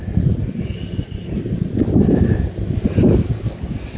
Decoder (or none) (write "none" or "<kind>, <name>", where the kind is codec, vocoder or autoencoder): none